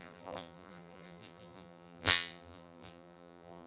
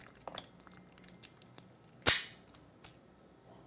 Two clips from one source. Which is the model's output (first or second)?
first